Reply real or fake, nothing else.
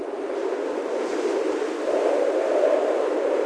real